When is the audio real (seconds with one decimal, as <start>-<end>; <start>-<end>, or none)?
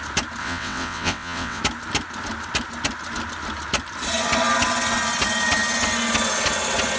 0.0-0.4; 1.6-7.0